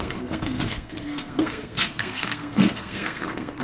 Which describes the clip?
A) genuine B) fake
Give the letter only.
B